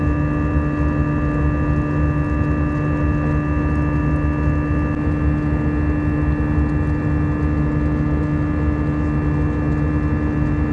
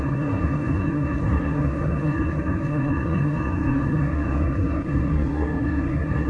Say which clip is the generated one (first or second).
second